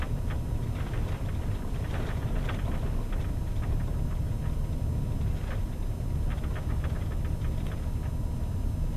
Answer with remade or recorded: recorded